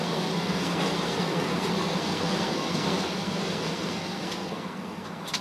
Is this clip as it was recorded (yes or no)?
no